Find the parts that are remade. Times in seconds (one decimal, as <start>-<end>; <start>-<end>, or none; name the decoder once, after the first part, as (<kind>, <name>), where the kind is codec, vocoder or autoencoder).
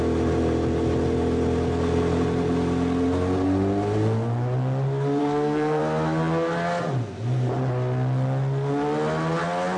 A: 5.2-5.8 (codec, SNAC)